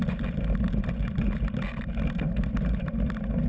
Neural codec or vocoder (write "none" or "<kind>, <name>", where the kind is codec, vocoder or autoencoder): none